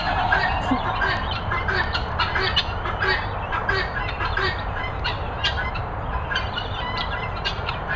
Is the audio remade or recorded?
remade